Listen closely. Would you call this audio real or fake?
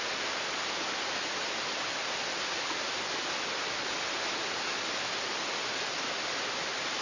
real